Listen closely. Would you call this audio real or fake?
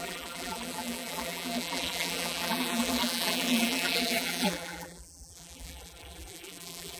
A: fake